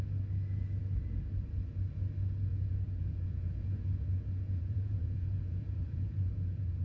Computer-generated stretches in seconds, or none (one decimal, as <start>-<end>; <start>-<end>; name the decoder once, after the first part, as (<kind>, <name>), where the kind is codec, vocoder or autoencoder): 2.5-6.8 (vocoder, Vocos)

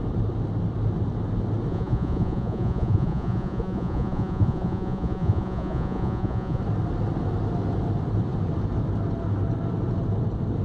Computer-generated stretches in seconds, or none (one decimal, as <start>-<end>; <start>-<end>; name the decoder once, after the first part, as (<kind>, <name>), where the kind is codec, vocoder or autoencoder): 1.7-6.6 (vocoder, Vocos)

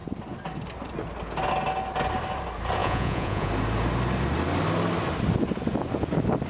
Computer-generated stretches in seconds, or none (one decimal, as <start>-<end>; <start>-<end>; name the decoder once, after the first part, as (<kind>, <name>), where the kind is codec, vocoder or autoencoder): 2.8-3.5 (vocoder, Vocos)

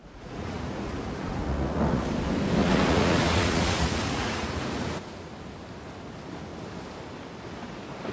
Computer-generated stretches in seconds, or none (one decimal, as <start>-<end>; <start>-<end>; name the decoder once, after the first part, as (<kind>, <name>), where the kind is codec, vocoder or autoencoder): 0.0-2.1 (vocoder, Vocos); 2.6-5.3

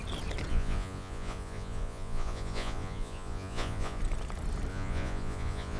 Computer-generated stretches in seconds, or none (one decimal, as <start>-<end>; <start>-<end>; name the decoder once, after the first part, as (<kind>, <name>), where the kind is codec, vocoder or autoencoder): 0.5-4.0 (vocoder, Vocos); 4.7-5.8

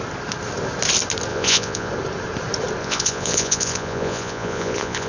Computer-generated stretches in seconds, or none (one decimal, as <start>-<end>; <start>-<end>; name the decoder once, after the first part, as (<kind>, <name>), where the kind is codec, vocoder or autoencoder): 1.3-1.9 (vocoder, Vocos); 2.8-5.1

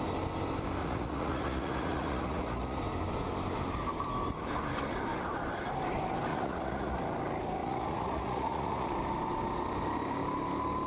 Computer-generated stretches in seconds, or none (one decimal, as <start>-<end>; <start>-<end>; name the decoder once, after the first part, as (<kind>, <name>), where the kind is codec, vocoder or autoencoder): 0.8-2.8 (vocoder, Vocos); 6.3-7.0; 7.6-8.9